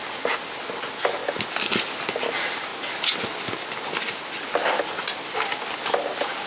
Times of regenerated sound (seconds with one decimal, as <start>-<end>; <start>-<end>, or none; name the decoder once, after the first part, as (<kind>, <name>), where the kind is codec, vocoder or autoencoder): none